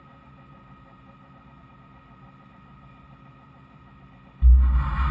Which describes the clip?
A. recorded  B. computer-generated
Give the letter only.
A